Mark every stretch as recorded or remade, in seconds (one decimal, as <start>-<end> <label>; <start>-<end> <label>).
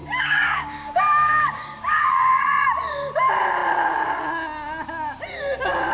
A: 0.0-2.4 remade; 2.4-5.9 recorded